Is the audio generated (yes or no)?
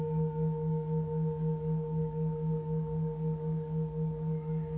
yes